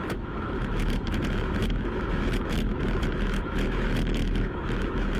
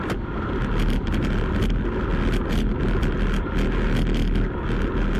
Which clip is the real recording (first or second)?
second